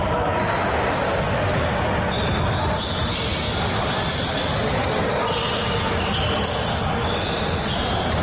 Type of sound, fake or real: real